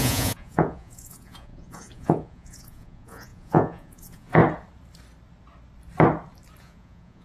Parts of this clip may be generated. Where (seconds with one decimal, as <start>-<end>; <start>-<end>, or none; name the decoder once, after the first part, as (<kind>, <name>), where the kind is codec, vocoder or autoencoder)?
0.0-4.4 (vocoder, Vocos); 6.6-7.2